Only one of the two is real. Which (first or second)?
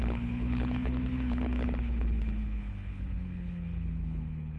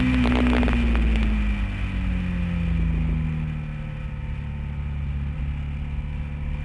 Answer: second